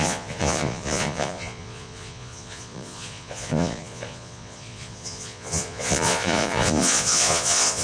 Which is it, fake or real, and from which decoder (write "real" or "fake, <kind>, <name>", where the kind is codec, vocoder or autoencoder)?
fake, vocoder, Vocos